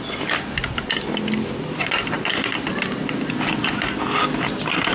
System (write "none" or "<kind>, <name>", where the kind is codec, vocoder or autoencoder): none